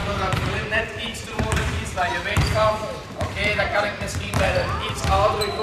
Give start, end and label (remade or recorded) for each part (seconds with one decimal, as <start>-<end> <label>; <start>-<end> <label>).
0.0-0.7 remade; 0.7-1.1 recorded; 1.1-4.5 remade; 4.5-5.6 recorded